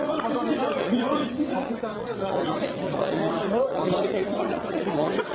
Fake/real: fake